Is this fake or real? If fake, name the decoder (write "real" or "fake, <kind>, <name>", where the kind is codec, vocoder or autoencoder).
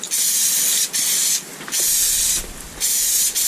real